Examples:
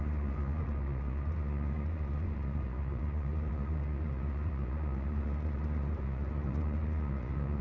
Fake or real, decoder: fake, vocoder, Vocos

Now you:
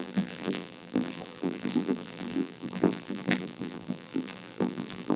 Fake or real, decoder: fake, vocoder, BigVGAN v2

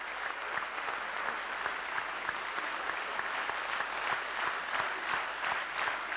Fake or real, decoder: real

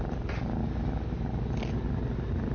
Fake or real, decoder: real